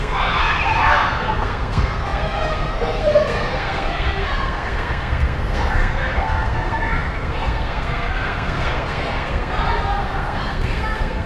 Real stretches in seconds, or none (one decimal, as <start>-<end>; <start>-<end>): none